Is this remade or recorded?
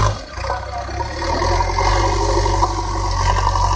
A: recorded